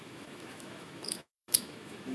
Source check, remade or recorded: remade